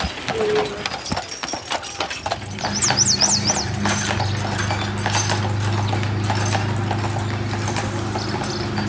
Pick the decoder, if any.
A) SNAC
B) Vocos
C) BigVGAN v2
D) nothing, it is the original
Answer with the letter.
D